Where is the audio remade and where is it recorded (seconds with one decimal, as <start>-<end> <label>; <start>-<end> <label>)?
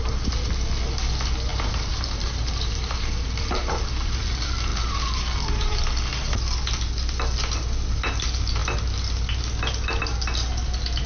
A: 0.0-1.5 recorded; 1.5-4.3 remade; 4.3-4.7 recorded; 4.7-5.8 remade; 5.8-11.1 recorded